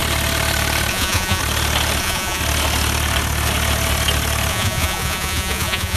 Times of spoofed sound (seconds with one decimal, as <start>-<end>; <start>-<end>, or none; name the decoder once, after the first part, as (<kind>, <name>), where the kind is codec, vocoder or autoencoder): 0.9-1.4 (vocoder, Vocos); 2.0-2.4; 4.5-6.0